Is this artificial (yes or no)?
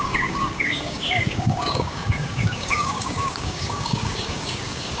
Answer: yes